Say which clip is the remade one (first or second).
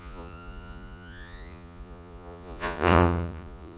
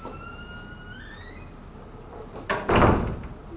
first